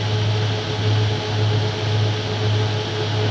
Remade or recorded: recorded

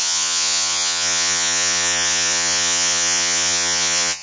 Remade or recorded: remade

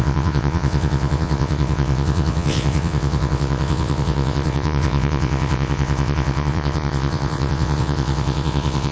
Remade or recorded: remade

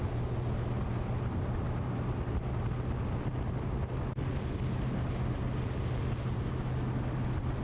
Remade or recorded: recorded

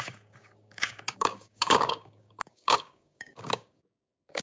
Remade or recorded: remade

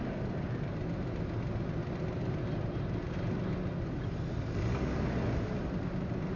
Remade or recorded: recorded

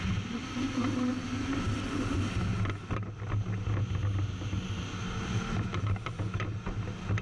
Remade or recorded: recorded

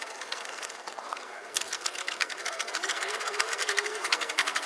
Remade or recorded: remade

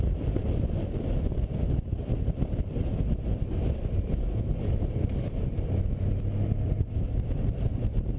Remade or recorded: remade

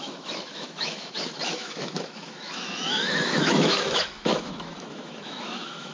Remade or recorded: remade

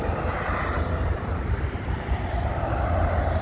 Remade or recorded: recorded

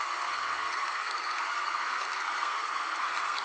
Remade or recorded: remade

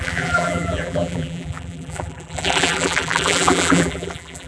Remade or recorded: remade